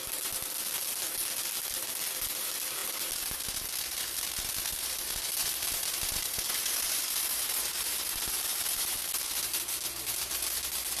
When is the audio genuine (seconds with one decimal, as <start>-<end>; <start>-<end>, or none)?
0.0-5.4; 7.6-11.0